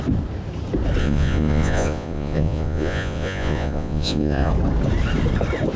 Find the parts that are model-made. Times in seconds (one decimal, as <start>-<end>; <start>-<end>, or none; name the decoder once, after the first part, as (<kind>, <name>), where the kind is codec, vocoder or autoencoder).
1.0-4.5 (vocoder, Vocos)